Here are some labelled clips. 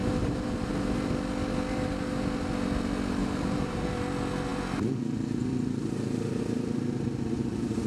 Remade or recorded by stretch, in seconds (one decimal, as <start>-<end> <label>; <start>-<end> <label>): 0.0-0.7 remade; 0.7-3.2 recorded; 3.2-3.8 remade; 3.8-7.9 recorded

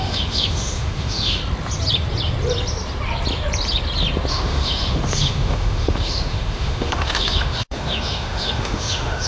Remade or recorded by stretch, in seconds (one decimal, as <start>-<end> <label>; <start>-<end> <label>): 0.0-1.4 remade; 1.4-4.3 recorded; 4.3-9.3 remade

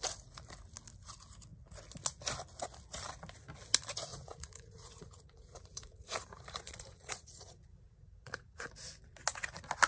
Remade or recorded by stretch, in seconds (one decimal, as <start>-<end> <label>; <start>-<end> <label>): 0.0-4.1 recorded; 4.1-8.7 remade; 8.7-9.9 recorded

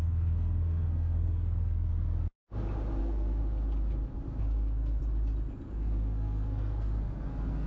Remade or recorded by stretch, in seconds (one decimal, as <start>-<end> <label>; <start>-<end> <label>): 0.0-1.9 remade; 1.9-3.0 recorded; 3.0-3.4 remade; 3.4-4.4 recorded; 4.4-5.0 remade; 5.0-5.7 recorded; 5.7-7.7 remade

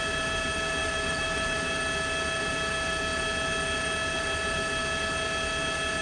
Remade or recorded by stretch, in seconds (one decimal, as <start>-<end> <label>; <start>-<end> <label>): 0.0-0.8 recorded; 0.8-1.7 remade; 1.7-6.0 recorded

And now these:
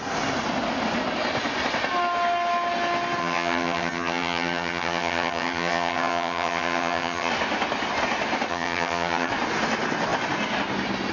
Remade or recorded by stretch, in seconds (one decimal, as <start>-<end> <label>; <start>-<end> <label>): 0.0-3.2 recorded; 3.2-7.3 remade; 7.3-8.5 recorded; 8.5-9.3 remade; 9.3-11.1 recorded